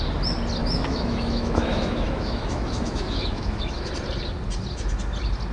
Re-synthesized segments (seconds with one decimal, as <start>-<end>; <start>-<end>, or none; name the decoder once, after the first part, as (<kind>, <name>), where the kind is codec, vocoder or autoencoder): 0.6-3.9 (autoencoder, DAC-VAE)